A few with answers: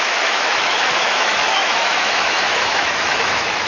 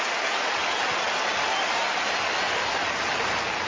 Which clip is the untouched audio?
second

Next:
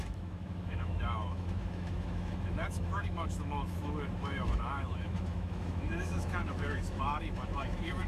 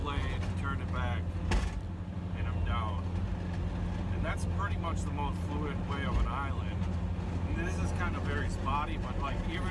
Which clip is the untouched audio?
second